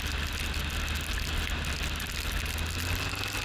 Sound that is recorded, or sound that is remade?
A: recorded